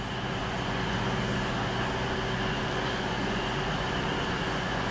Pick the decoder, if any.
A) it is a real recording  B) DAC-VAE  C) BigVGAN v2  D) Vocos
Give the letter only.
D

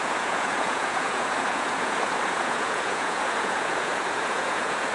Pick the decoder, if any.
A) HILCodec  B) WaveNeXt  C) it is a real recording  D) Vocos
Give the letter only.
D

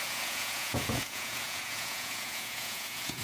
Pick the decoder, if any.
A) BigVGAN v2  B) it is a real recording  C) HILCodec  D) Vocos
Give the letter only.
D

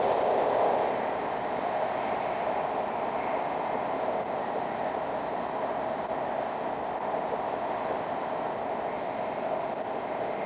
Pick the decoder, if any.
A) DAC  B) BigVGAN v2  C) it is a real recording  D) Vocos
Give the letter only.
C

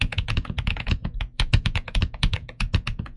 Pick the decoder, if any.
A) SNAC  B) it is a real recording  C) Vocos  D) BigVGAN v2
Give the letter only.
C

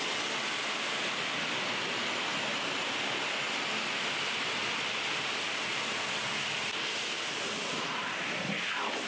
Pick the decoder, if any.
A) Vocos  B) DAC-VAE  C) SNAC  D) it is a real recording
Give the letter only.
D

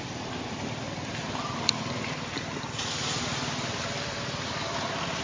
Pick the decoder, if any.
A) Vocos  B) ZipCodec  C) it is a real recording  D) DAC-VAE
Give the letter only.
C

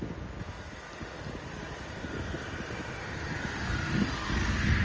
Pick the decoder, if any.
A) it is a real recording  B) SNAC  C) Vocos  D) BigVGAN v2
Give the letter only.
A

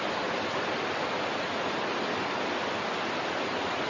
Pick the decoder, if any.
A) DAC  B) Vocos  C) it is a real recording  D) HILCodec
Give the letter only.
C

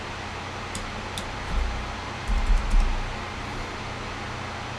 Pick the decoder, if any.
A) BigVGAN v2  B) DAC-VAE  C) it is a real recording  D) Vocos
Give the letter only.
C